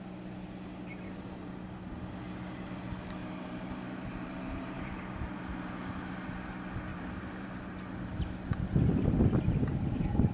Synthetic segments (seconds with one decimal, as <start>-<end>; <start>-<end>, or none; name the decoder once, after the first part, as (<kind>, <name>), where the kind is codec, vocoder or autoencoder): 0.9-1.5 (vocoder, BigVGAN v2); 3.2-5.4; 6.9-7.5